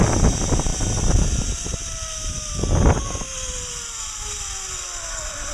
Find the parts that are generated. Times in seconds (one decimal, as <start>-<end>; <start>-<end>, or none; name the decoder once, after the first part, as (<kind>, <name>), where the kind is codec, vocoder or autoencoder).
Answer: none